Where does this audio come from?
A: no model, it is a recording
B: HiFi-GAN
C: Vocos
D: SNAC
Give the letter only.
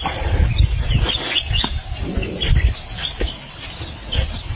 A